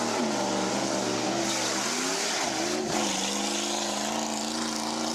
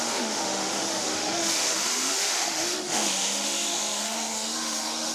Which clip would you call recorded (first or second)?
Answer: first